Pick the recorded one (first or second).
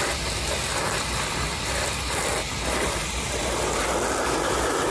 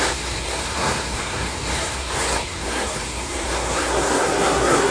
first